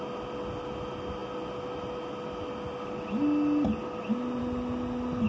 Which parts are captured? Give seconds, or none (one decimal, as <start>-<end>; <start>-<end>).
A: 0.0-5.3